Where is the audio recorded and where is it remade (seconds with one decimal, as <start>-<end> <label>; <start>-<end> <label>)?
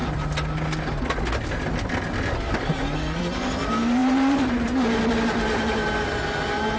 0.0-4.0 recorded; 4.0-5.0 remade; 5.0-6.8 recorded